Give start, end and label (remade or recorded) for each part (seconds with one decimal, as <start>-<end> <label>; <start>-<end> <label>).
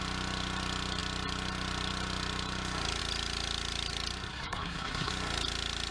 0.0-4.3 recorded; 4.3-5.1 remade; 5.1-5.9 recorded